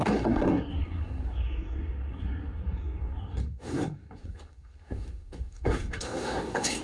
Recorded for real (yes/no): no